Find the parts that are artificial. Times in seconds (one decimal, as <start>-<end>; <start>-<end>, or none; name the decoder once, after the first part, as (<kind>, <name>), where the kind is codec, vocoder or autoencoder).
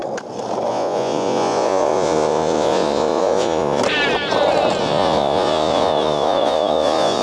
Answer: 0.7-3.8 (vocoder, Vocos); 4.8-7.2